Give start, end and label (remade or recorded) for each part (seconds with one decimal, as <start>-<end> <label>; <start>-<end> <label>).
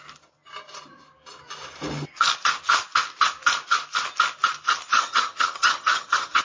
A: 0.0-4.9 recorded; 4.9-6.4 remade